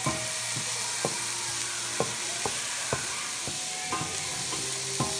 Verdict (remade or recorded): recorded